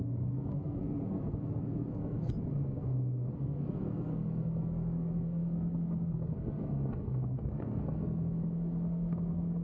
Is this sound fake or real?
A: fake